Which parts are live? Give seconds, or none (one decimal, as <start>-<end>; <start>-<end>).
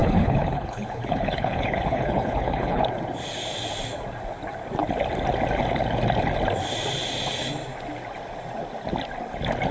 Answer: 2.9-9.7